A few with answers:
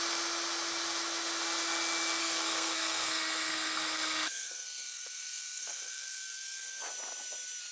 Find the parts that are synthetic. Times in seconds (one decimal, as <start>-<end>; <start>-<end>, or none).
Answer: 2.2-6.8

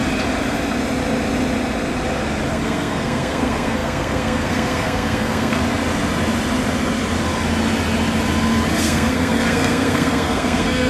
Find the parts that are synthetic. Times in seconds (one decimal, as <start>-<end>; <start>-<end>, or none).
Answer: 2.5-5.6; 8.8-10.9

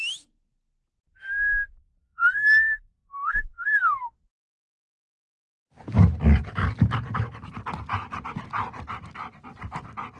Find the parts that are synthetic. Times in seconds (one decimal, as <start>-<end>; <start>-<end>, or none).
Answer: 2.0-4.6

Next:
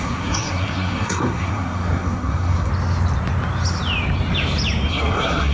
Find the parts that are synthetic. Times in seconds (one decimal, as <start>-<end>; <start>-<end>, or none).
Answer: 0.0-2.7; 4.9-5.5

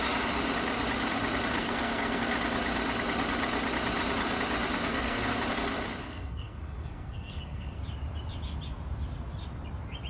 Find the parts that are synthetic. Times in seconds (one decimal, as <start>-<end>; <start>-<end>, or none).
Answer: 1.6-2.3; 4.9-5.4; 6.0-7.8

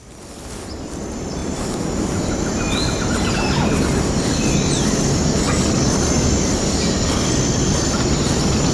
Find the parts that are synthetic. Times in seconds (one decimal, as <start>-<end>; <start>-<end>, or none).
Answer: none